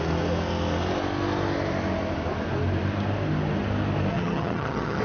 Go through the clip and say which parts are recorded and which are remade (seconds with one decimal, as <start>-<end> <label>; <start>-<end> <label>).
0.0-4.1 recorded; 4.1-5.0 remade